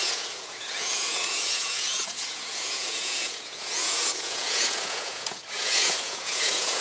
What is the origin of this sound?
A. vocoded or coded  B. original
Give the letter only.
A